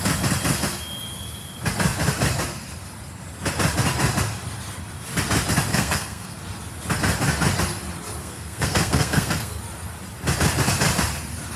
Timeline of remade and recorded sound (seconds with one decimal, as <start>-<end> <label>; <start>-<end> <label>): 0.0-5.7 recorded; 5.7-6.4 remade; 6.4-8.2 recorded; 8.2-9.6 remade; 9.6-11.6 recorded

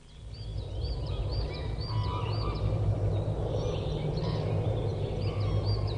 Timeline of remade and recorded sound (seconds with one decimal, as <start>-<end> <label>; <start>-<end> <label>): 0.0-0.5 recorded; 0.5-1.2 remade; 1.2-6.0 recorded

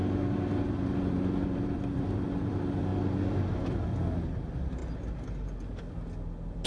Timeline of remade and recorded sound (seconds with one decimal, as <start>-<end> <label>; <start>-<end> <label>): 0.0-0.5 recorded; 0.5-2.9 remade; 2.9-3.7 recorded; 3.7-4.8 remade; 4.8-6.7 recorded

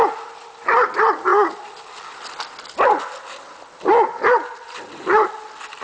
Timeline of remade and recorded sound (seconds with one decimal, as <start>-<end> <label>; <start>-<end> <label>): 0.0-5.8 recorded

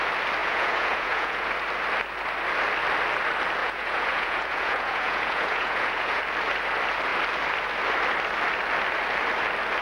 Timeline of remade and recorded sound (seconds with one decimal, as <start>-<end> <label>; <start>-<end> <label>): 0.0-0.4 recorded; 0.4-1.5 remade; 1.5-3.6 recorded; 3.6-6.2 remade; 6.2-9.8 recorded

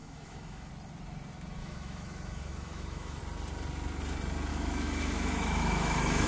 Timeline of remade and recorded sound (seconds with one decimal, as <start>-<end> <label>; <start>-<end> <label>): 0.0-0.7 remade; 0.7-1.6 recorded; 1.6-3.2 remade; 3.2-4.5 recorded; 4.5-6.3 remade

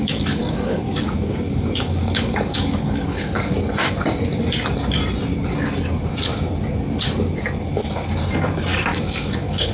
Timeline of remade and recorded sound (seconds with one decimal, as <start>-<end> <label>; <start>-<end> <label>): 0.0-3.5 remade; 3.5-8.7 recorded; 8.7-9.7 remade

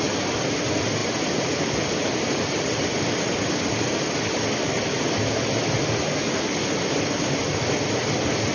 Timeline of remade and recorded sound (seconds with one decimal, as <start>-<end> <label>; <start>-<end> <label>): 0.0-8.5 recorded